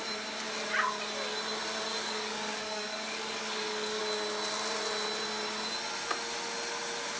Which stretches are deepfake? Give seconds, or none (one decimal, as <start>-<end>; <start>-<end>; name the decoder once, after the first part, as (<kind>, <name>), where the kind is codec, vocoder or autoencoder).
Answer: 1.9-4.0 (codec, DAC)